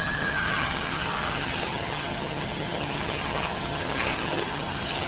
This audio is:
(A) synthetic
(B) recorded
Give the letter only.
A